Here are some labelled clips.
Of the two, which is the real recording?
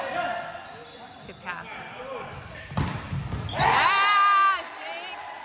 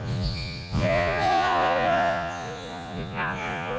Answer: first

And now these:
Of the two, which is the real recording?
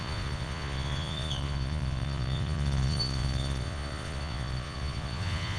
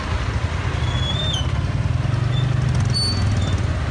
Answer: second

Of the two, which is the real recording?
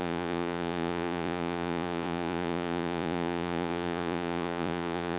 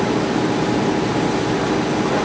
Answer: second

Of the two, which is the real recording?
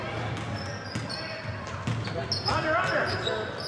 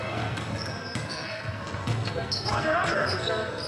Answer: first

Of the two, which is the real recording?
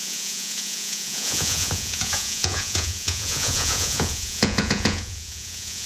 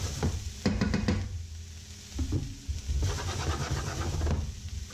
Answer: second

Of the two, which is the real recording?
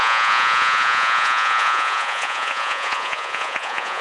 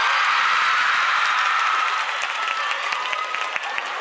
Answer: second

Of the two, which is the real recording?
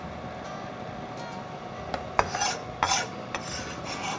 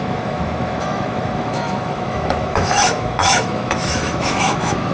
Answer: first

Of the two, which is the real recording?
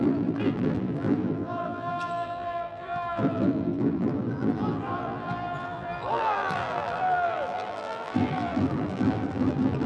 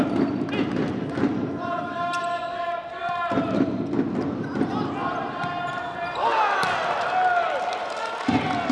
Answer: second